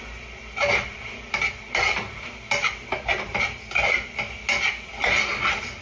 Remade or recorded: recorded